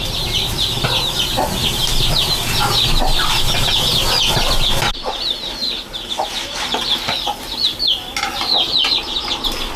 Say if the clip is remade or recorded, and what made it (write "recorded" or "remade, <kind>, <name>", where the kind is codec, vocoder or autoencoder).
recorded